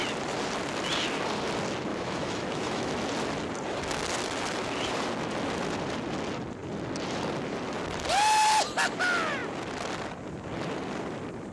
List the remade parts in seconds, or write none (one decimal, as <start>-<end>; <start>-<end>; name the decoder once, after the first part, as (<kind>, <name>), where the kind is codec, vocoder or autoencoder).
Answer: 1.9-2.9 (autoencoder, DAC-VAE)